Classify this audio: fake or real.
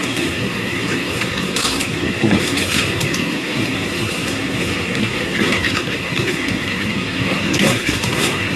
fake